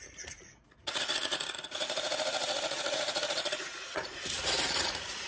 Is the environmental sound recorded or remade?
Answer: remade